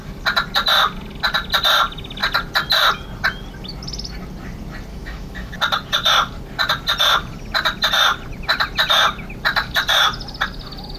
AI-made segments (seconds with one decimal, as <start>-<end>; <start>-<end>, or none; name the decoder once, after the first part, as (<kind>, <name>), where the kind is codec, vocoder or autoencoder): 4.9-5.5 (autoencoder, DAC-VAE)